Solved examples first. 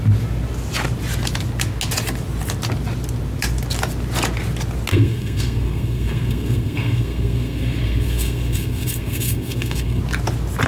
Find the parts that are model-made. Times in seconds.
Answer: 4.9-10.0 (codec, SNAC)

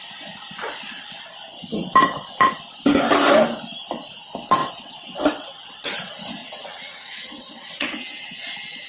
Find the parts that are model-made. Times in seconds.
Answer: 4.6-5.6 (vocoder, WaveNeXt); 6.4-8.4

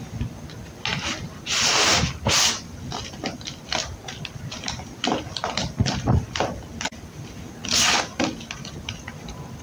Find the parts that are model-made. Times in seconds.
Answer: none

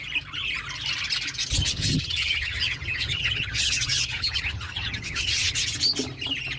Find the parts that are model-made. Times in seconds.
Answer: 1.6-5.6 (vocoder, HiFi-GAN)

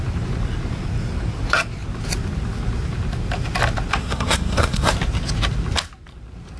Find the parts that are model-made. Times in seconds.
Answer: 4.0-4.9 (codec, SNAC)

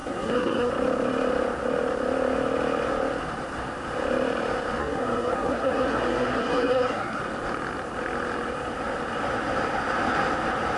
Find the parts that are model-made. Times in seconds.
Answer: 0.0-0.7 (codec, SNAC); 4.8-7.2

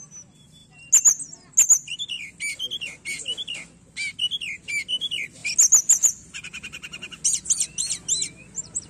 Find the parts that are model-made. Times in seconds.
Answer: none

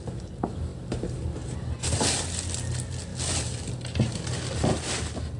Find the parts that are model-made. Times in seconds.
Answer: 0.7-2.4 (vocoder, BigVGAN v2); 3.1-4.1; 4.7-5.4